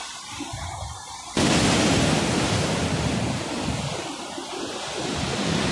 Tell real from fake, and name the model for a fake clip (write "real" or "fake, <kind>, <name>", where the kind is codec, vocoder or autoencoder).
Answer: real